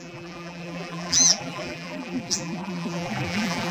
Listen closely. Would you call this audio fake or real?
fake